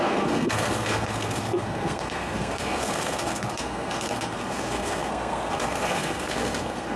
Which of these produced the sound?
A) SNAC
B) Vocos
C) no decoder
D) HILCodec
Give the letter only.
A